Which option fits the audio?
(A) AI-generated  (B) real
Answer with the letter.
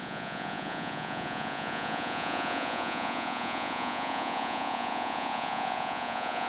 A